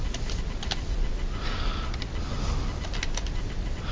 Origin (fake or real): real